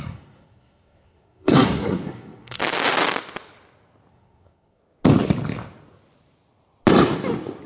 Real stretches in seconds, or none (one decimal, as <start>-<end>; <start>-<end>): 2.6-4.1; 4.8-7.7